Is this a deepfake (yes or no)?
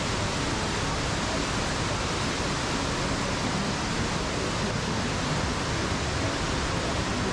no